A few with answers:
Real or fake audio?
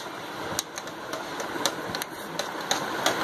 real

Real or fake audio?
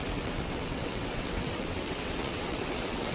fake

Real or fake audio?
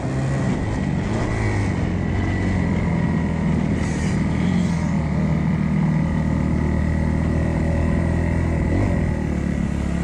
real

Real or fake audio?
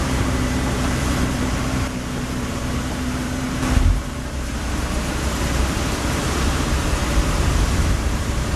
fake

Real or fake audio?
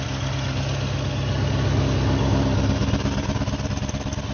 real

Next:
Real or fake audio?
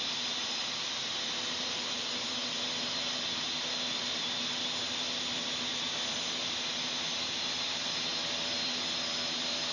real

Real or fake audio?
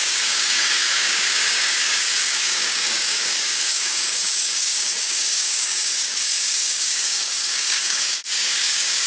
fake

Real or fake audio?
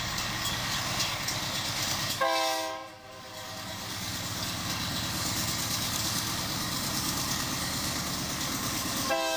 fake